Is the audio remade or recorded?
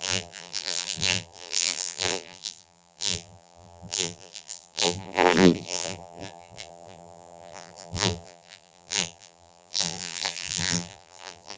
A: remade